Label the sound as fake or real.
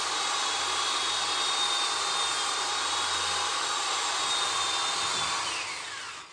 real